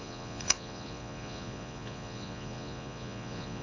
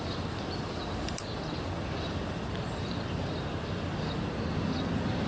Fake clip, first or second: first